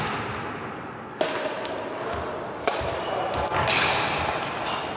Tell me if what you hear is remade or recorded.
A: recorded